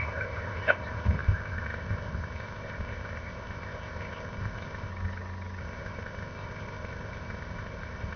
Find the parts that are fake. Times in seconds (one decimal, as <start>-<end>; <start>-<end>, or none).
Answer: 0.0-4.9; 5.6-8.2